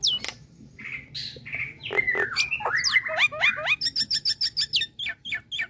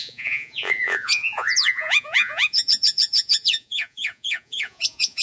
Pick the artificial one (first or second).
second